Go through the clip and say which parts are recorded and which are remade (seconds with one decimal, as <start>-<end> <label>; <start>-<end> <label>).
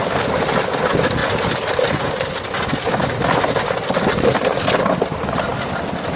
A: 0.0-1.2 recorded; 1.2-4.1 remade; 4.1-5.5 recorded; 5.5-6.2 remade